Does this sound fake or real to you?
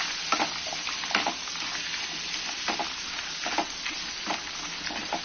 real